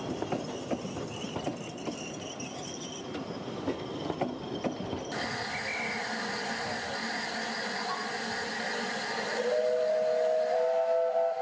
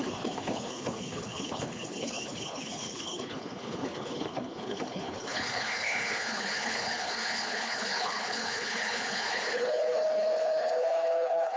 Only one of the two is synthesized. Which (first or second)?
second